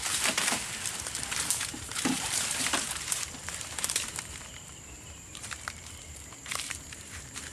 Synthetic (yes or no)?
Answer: yes